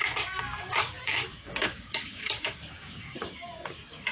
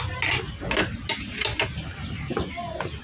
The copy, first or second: first